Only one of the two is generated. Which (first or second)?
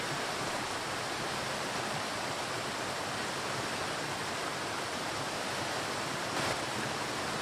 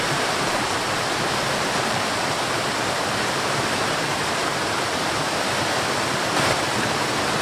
second